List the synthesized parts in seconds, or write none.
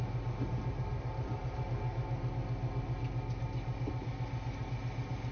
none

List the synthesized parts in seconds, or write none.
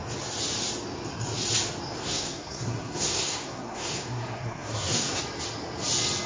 2.0-5.2 (codec, SNAC)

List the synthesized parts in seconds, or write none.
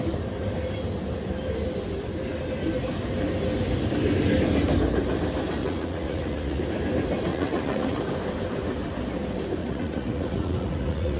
5.6-6.6 (vocoder, Vocos); 7.3-8.0; 9.6-11.2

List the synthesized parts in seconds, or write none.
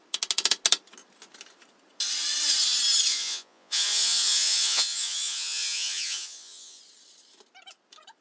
3.1-6.8 (vocoder, Vocos)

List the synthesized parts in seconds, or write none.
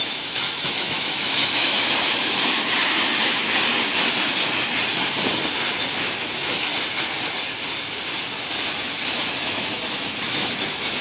0.0-3.5 (autoencoder, DAC-VAE); 5.9-6.7; 9.1-11.0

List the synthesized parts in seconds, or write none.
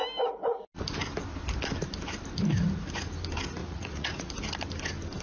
3.6-4.3 (vocoder, Vocos)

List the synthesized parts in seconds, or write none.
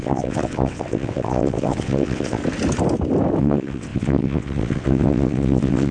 0.0-2.4 (vocoder, WaveNeXt); 3.4-5.9